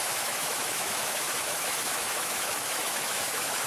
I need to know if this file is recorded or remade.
remade